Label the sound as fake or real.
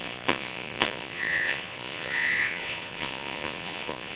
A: fake